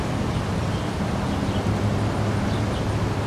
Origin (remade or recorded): recorded